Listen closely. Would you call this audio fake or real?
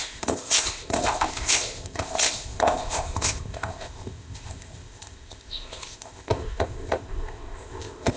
fake